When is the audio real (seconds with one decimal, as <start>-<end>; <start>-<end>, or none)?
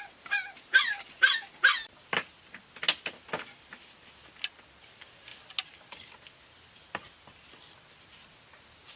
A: 0.0-9.0